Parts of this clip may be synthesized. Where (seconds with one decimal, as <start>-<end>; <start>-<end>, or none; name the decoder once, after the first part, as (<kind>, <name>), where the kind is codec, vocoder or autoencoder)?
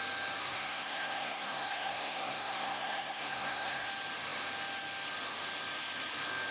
0.4-3.9 (codec, SNAC)